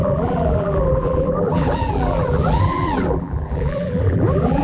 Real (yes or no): no